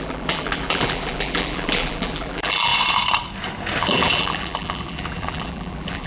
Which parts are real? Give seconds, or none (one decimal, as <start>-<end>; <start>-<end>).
2.7-3.8